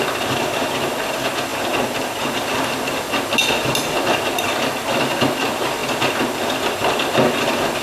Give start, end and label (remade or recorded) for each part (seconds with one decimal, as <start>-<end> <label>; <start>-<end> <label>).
0.0-7.8 recorded